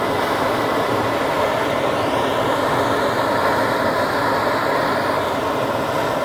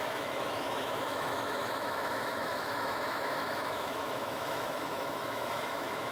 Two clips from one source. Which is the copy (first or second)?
second